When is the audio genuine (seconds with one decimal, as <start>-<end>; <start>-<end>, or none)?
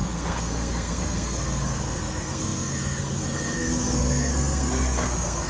none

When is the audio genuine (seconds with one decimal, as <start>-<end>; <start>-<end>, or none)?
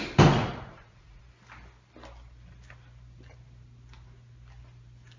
0.0-0.5; 1.2-5.2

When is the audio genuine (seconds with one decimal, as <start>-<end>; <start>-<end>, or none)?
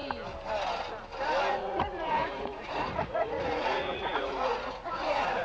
0.0-1.5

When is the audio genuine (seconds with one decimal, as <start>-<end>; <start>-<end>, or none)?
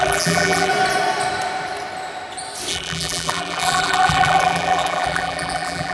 0.7-2.7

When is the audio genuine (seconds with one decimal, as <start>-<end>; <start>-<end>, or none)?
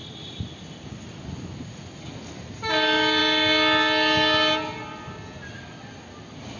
0.0-6.6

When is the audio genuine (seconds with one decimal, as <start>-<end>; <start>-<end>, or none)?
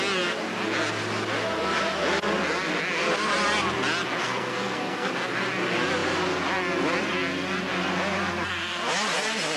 0.0-4.2; 5.1-9.6